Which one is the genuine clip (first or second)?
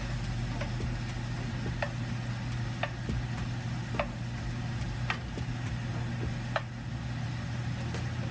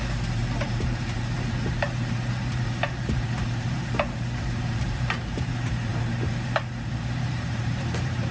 first